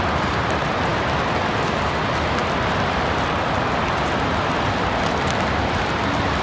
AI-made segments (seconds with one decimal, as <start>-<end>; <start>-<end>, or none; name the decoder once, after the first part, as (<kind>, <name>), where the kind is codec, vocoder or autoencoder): none

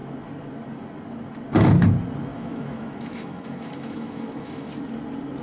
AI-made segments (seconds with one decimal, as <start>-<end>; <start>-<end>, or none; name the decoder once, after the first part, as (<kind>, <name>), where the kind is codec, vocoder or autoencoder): 2.3-4.7 (autoencoder, DAC-VAE)

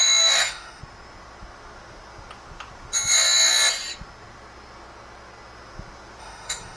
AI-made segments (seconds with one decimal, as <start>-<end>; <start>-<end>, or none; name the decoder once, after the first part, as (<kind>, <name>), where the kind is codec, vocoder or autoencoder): 0.0-0.8 (autoencoder, DAC-VAE); 6.2-6.8